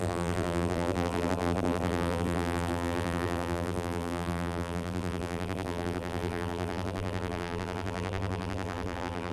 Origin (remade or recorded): remade